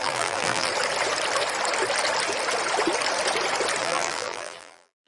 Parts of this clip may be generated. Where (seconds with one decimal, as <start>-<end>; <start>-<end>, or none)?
0.0-0.7; 3.8-5.1